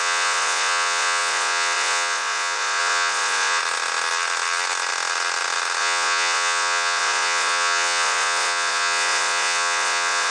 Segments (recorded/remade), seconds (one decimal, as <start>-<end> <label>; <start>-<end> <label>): 0.0-3.6 remade; 3.6-5.8 recorded; 5.8-10.3 remade